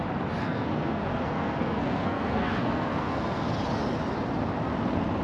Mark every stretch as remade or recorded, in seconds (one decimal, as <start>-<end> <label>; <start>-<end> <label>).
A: 0.0-0.4 recorded; 0.4-3.5 remade; 3.5-5.2 recorded